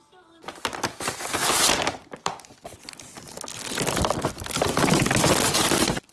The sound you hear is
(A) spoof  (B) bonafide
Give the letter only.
B